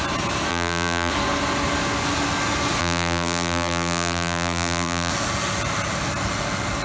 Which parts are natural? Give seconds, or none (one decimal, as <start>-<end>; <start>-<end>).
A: 0.0-0.5; 1.1-2.8; 5.1-6.8